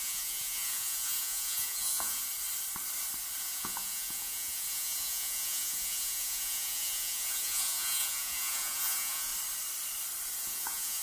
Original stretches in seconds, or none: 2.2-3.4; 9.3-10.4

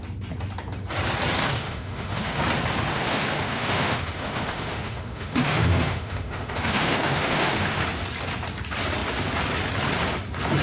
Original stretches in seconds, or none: 0.0-1.4; 2.4-2.9; 7.8-10.6

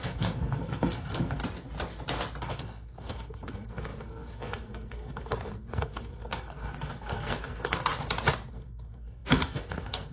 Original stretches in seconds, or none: 1.4-2.4; 7.9-8.5

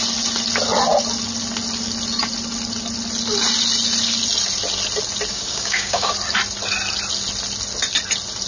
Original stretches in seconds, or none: 0.0-5.3; 6.1-8.5